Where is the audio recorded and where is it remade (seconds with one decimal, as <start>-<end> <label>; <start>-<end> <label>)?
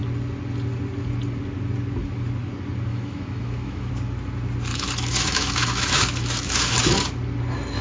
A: 0.0-2.9 recorded; 2.9-3.9 remade; 3.9-4.7 recorded; 4.7-7.0 remade; 7.0-7.8 recorded